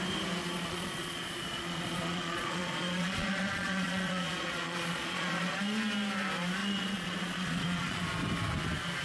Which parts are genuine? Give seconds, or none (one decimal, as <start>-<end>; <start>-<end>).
0.0-0.4; 5.6-6.6; 8.0-9.0